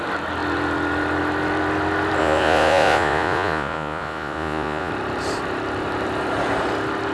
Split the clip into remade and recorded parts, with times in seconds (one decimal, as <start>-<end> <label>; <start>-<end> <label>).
0.0-2.2 recorded; 2.2-4.9 remade; 4.9-7.1 recorded